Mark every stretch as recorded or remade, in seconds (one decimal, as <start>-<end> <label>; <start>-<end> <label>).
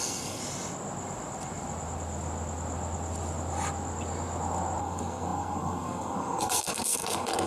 0.0-0.4 remade; 0.4-4.8 recorded; 4.8-7.5 remade